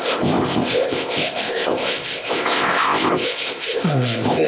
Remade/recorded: remade